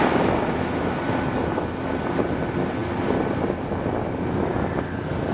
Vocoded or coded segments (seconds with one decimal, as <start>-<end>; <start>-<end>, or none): none